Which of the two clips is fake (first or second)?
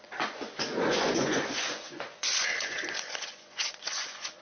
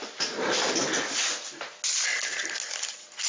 first